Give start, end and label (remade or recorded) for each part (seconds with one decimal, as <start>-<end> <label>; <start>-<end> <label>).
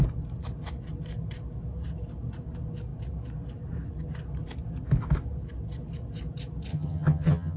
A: 0.0-6.7 recorded; 6.7-7.6 remade